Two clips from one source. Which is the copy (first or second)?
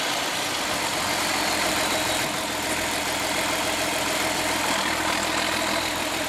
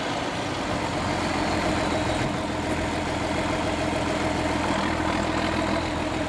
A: first